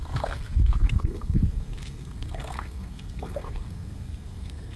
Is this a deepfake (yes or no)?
yes